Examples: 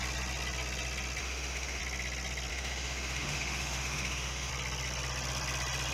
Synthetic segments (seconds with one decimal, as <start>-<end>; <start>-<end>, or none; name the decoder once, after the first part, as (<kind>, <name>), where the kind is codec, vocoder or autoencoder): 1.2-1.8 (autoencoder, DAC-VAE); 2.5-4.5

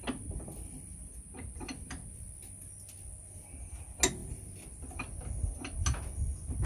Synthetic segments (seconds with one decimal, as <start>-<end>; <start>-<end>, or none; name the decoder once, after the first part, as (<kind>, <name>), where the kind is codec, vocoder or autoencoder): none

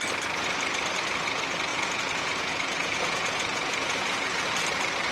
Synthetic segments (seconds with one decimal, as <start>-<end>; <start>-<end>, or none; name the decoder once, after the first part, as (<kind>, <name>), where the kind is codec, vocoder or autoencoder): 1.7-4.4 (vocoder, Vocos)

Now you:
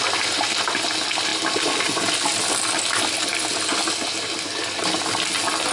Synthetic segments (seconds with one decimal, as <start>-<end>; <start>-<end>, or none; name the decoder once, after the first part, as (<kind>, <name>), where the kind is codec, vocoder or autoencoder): none